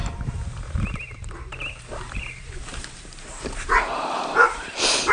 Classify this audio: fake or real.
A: fake